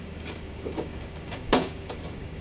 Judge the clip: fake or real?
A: fake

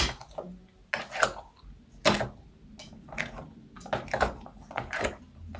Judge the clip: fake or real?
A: real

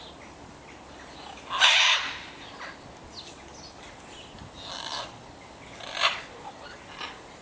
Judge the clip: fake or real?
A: real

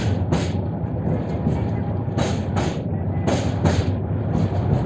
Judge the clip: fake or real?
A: real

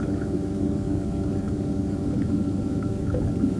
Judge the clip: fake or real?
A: fake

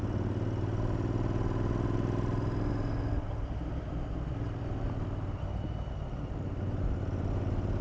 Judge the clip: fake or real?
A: real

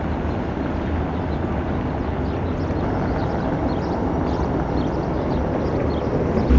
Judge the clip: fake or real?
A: real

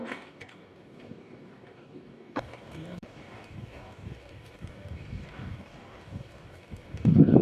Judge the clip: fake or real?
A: fake